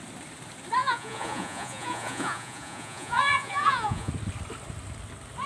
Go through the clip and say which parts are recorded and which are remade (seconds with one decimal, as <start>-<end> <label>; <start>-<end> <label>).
0.0-0.8 recorded; 0.8-4.1 remade; 4.1-5.5 recorded